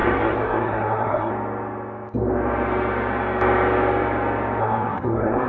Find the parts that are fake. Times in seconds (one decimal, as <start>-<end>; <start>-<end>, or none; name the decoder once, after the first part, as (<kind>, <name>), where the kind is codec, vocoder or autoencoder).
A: 0.0-1.3 (codec, SNAC); 4.6-5.5